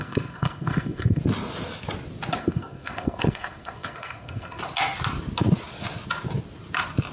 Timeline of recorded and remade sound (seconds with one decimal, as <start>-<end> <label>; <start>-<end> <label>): 0.0-1.2 remade; 1.2-2.4 recorded; 2.4-4.6 remade; 4.6-7.1 recorded